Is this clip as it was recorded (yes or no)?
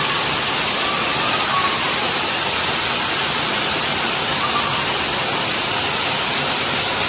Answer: yes